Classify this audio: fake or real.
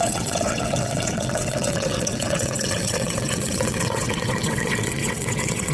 fake